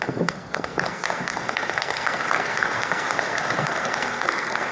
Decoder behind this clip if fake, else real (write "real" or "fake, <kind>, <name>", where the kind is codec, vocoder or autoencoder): fake, codec, SNAC